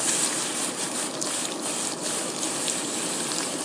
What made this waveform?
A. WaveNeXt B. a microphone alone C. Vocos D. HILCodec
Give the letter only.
B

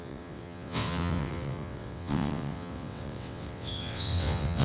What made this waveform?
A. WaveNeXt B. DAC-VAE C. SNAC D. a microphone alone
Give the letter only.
A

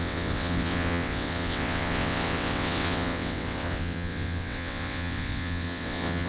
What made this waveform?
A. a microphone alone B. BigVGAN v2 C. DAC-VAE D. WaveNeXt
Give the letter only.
D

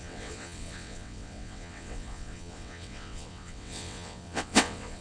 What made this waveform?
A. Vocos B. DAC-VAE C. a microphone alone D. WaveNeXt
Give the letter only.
D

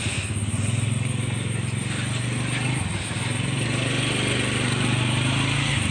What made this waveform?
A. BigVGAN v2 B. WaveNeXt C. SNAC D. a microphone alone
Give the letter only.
D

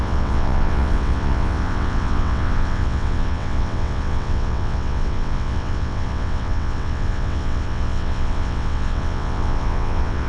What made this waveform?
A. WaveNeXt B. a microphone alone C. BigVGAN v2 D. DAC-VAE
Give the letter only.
A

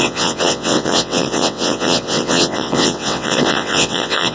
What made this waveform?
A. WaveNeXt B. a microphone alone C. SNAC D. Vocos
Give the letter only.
A